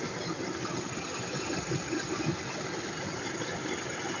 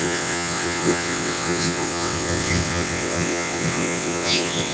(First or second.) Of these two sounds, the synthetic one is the second